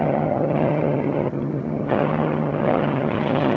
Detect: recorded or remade remade